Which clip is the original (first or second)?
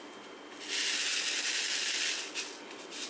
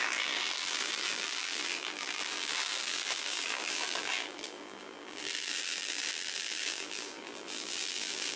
first